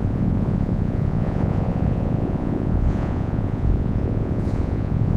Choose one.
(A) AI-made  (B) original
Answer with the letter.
A